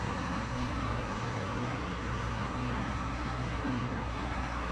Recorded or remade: remade